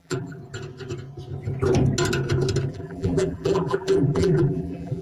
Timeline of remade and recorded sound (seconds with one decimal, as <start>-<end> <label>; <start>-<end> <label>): 0.0-0.4 remade; 0.4-2.7 recorded; 2.7-5.0 remade